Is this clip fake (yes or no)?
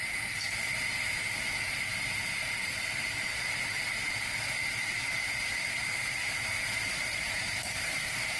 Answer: yes